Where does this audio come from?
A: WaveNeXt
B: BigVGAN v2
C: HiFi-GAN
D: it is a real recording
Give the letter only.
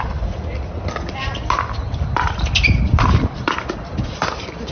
D